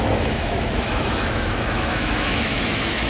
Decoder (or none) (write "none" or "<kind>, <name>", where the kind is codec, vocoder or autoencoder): autoencoder, DAC-VAE